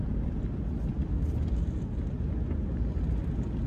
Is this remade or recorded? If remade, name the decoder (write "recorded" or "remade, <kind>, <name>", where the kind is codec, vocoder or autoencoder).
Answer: recorded